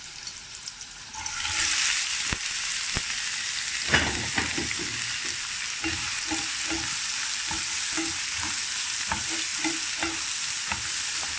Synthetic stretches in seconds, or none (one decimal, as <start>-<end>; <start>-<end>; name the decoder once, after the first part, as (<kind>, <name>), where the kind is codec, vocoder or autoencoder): none